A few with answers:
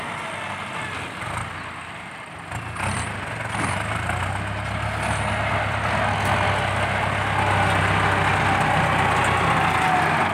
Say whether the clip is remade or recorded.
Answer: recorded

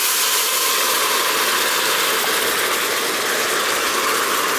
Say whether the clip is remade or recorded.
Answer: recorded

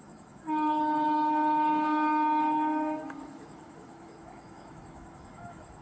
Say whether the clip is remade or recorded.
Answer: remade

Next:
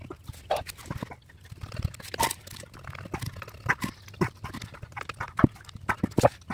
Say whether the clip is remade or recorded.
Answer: recorded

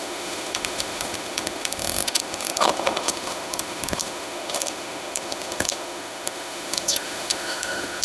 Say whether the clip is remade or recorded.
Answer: remade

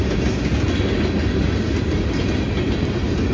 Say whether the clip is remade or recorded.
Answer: recorded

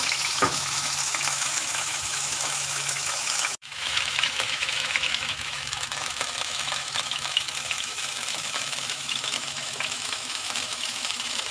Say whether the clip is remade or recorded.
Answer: remade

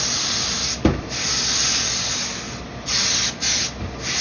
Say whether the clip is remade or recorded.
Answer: recorded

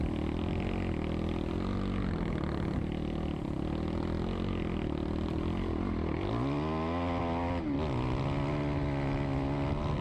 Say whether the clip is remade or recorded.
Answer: recorded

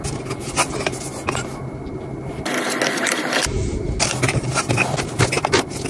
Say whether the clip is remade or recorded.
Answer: recorded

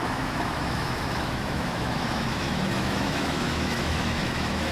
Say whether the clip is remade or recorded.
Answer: remade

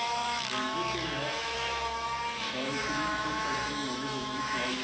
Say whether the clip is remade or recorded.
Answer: remade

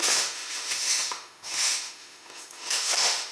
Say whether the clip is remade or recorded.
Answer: remade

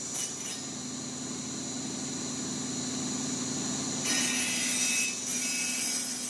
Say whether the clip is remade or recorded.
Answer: recorded